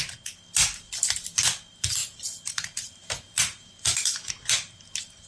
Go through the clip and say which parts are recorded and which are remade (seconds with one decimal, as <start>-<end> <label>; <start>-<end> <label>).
0.0-2.0 recorded; 2.0-4.3 remade; 4.3-5.3 recorded